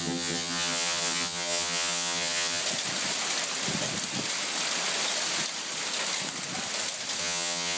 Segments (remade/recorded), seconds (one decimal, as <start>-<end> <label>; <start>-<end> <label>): 0.0-2.6 remade; 2.6-7.2 recorded; 7.2-7.8 remade